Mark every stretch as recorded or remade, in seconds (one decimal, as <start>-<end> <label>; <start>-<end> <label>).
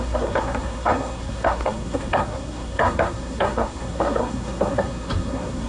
0.0-5.7 remade